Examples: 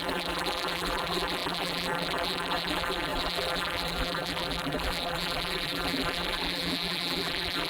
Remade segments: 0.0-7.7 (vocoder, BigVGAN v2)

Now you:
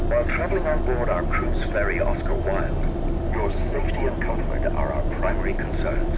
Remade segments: none